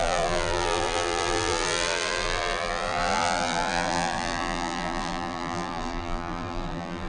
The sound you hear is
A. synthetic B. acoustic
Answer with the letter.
A